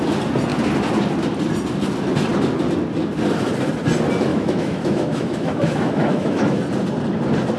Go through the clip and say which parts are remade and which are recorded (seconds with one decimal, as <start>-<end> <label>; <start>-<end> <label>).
0.0-4.3 recorded; 4.3-6.6 remade; 6.6-7.6 recorded